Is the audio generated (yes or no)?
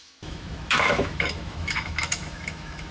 yes